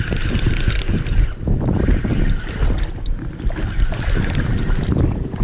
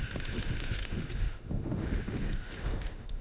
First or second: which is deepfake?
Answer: second